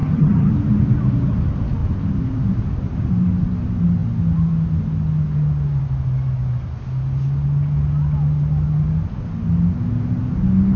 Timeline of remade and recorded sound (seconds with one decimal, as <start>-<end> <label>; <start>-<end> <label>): 0.0-0.5 remade; 0.5-10.8 recorded